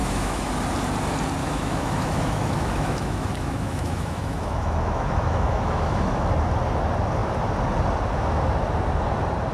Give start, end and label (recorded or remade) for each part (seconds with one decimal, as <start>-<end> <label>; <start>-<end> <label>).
0.0-0.5 remade; 0.5-1.4 recorded; 1.4-6.3 remade; 6.3-9.5 recorded